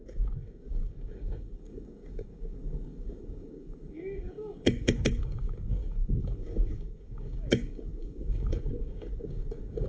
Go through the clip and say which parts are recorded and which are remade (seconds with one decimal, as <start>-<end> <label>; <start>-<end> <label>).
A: 0.0-9.9 remade